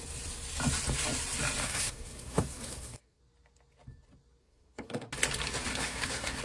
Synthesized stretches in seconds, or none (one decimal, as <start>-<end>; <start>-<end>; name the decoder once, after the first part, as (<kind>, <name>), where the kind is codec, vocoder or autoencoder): 1.6-3.2 (codec, SNAC); 4.4-5.1; 5.7-6.4